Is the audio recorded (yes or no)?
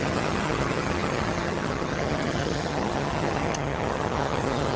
no